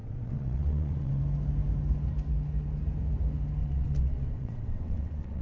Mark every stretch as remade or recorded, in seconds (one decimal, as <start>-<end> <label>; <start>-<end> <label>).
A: 0.0-1.2 remade; 1.2-3.6 recorded; 3.6-5.4 remade

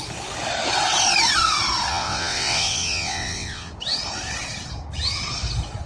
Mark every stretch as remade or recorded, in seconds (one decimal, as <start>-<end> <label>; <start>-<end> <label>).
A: 0.0-1.9 recorded; 1.9-3.7 remade; 3.7-5.9 recorded

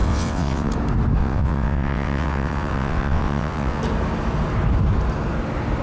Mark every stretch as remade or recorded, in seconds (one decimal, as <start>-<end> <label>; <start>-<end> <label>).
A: 0.0-0.7 remade; 0.7-1.2 recorded; 1.2-3.8 remade; 3.8-5.8 recorded

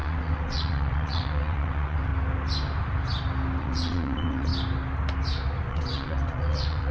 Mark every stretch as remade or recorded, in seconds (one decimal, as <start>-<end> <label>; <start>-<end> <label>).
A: 0.0-2.1 remade; 2.1-3.6 recorded; 3.6-4.5 remade; 4.5-5.7 recorded; 5.7-6.9 remade

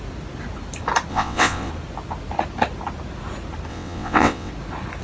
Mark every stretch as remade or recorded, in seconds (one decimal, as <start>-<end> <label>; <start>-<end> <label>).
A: 0.0-1.1 recorded; 1.1-1.7 remade; 1.7-3.7 recorded; 3.7-4.5 remade; 4.5-5.0 recorded

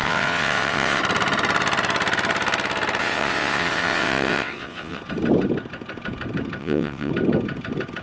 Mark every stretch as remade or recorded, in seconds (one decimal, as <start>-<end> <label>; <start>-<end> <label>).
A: 0.0-1.0 remade; 1.0-3.0 recorded; 3.0-5.0 remade; 5.0-6.6 recorded; 6.6-7.1 remade; 7.1-8.0 recorded

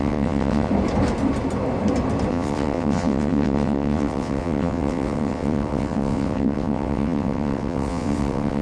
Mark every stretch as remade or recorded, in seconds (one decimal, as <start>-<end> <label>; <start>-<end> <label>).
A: 0.0-0.7 remade; 0.7-2.3 recorded; 2.3-8.6 remade